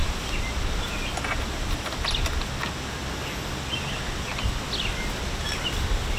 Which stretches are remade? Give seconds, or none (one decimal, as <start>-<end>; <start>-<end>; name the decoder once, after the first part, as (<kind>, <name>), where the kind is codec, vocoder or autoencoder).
none